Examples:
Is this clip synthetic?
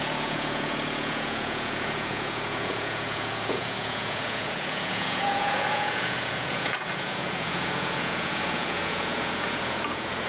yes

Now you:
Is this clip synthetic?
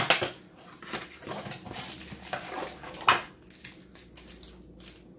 no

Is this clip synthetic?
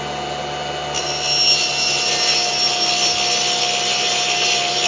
no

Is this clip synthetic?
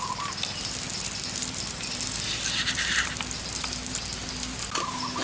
no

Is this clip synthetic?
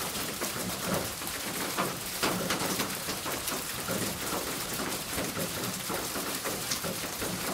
yes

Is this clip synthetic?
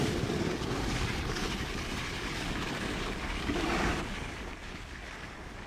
yes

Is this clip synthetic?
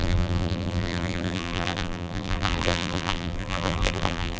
yes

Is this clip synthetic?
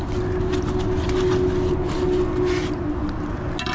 no